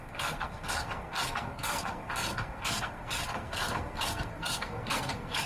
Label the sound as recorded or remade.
remade